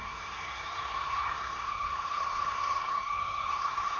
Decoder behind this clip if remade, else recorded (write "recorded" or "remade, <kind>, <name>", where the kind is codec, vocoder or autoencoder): remade, codec, SNAC